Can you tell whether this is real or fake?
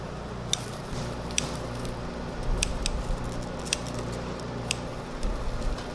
real